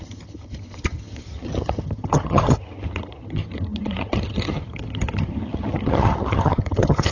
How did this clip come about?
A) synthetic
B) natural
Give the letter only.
A